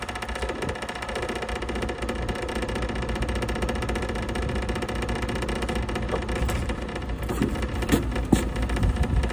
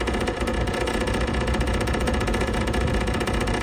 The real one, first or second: first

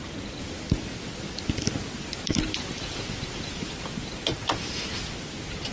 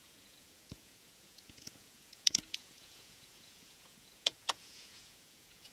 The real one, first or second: first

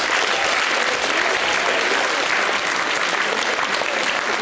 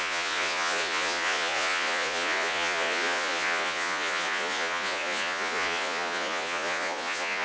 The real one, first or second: first